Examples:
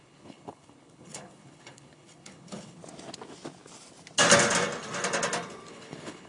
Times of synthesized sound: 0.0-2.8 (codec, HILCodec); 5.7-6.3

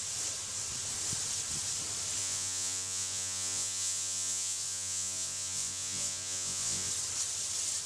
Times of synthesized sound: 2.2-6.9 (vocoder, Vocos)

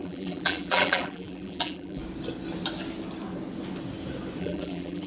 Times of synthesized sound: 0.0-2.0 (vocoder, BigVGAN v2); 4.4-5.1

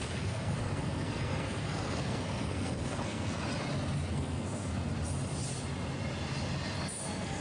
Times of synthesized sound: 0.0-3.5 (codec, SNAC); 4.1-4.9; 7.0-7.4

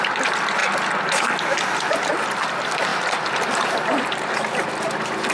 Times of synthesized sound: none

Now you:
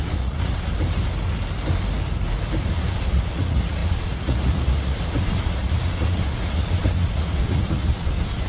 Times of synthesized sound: 0.0-0.7 (vocoder, Vocos); 2.6-8.5